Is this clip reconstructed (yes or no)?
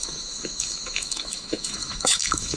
yes